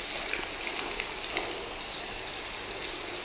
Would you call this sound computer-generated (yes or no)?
no